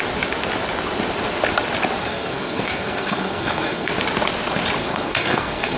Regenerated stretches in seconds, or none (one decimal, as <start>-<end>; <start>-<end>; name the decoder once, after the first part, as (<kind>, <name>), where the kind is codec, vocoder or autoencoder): 2.0-3.9 (codec, SNAC); 4.8-5.8